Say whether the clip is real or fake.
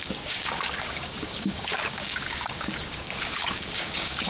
fake